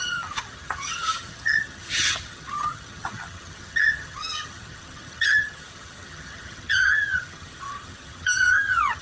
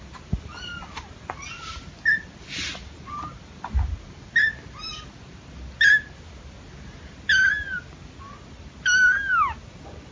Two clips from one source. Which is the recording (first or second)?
second